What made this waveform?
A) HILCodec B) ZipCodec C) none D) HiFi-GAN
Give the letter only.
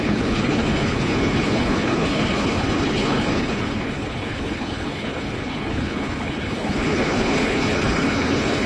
A